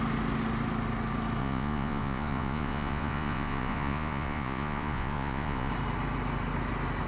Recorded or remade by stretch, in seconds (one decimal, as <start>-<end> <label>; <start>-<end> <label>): 0.0-1.4 recorded; 1.4-5.7 remade; 5.7-7.1 recorded